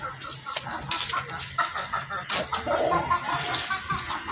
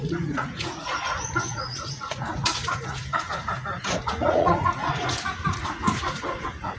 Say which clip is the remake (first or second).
second